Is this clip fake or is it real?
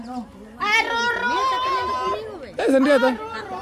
real